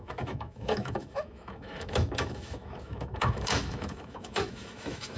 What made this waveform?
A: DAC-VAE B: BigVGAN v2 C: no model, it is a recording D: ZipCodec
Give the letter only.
A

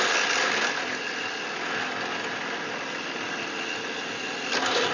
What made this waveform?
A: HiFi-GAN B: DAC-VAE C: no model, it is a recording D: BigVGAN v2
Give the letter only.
C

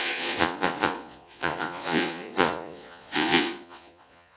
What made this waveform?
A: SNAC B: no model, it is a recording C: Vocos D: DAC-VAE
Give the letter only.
C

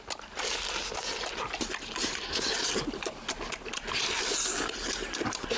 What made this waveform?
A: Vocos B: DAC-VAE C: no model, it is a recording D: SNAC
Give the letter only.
C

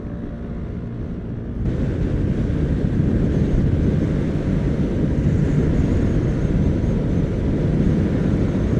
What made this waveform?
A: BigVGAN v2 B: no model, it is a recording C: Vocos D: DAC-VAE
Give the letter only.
B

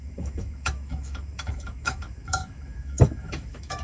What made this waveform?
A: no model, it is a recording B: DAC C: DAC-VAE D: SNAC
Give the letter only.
C